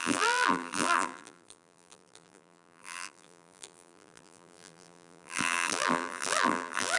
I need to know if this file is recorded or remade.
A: remade